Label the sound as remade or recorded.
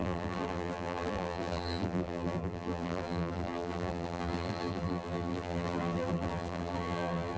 remade